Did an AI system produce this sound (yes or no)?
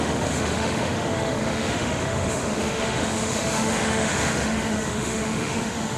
yes